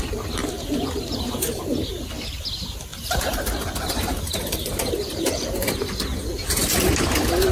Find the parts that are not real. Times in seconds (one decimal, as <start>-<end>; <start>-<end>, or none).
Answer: 0.4-1.9; 2.9-6.0